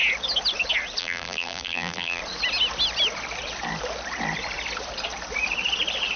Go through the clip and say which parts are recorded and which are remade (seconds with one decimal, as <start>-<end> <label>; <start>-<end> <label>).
0.0-1.0 recorded; 1.0-2.2 remade; 2.2-6.2 recorded